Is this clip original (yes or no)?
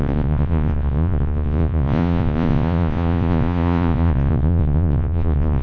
no